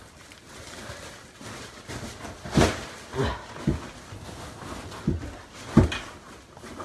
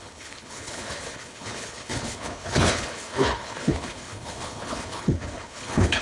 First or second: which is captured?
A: first